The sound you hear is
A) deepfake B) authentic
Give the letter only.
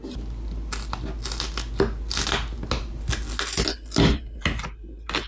B